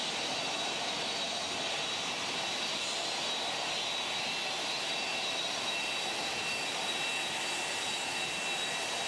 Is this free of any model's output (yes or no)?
no